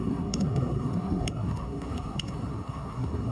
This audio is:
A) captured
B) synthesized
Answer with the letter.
B